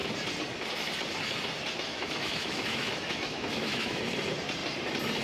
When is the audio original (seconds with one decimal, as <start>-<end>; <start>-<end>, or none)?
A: 0.0-1.9; 4.0-5.2